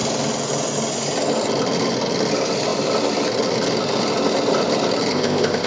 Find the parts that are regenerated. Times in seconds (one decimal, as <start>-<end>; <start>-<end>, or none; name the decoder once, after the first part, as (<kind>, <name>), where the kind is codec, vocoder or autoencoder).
5.1-5.7 (codec, ZipCodec)

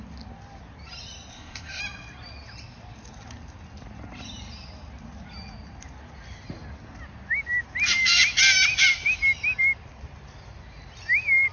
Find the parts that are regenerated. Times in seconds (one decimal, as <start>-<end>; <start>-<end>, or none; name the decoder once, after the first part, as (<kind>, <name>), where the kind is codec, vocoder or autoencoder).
1.3-1.8 (codec, ZipCodec)